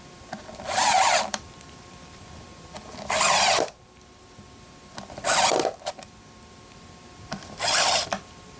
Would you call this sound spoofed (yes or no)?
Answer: yes